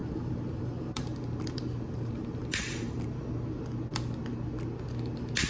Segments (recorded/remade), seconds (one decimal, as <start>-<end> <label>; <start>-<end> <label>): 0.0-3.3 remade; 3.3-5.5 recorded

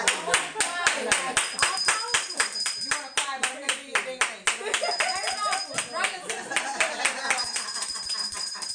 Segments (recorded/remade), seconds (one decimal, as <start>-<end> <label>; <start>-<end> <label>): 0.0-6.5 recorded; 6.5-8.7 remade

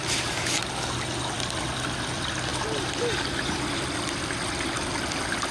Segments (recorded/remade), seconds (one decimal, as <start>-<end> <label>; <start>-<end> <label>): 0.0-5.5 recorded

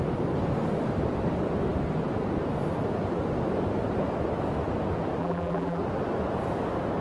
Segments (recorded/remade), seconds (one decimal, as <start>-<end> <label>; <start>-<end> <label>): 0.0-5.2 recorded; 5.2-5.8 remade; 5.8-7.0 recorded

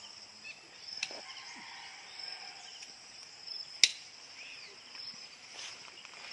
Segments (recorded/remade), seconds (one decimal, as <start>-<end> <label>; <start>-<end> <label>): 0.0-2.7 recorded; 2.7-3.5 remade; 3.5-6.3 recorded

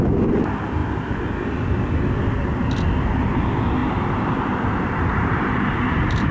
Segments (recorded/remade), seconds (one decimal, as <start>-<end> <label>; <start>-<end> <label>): 0.0-3.8 recorded; 3.8-6.3 remade

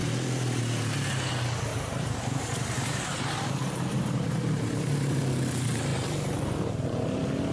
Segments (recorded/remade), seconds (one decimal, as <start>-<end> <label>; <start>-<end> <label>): 0.0-1.7 recorded; 1.7-5.2 remade; 5.2-7.5 recorded

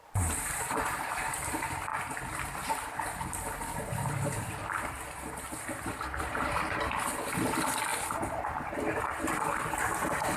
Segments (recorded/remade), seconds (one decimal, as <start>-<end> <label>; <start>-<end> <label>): 0.0-10.4 recorded